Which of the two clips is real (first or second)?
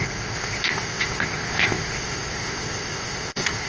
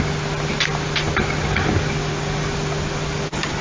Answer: second